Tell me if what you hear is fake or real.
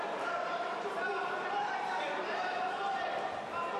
fake